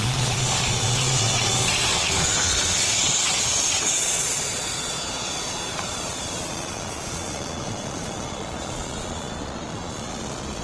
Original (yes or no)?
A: no